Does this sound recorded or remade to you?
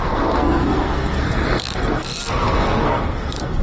remade